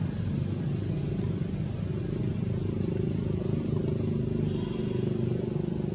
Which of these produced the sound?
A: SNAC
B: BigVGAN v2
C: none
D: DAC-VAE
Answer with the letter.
C